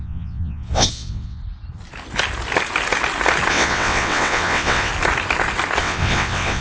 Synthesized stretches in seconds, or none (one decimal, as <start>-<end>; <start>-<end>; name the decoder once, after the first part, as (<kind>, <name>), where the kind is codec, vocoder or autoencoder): 0.0-1.4 (vocoder, WaveNeXt); 3.5-4.9; 5.8-6.6